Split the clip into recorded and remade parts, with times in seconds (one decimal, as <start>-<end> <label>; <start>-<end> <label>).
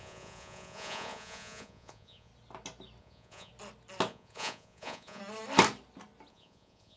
0.0-2.3 remade; 2.3-3.0 recorded; 3.0-3.5 remade; 3.5-4.1 recorded; 4.1-5.2 remade; 5.2-6.3 recorded; 6.3-7.0 remade